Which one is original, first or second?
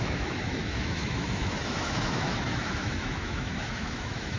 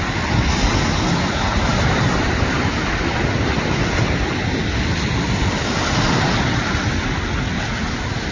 second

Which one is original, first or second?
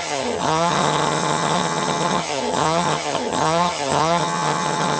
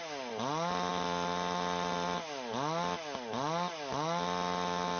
second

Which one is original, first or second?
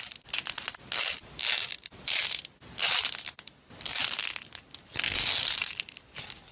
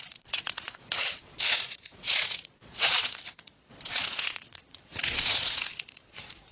first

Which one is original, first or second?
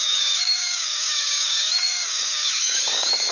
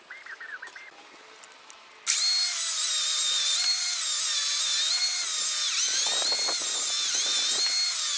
second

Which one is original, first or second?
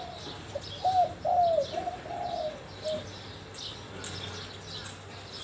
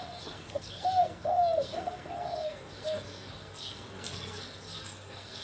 first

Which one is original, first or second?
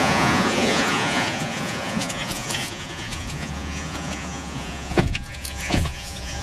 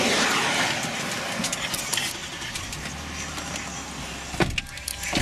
second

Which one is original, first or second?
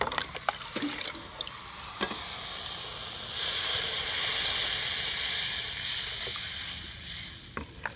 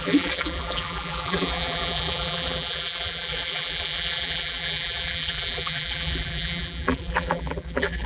first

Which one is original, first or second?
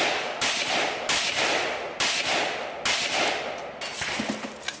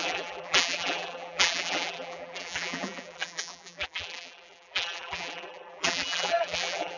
first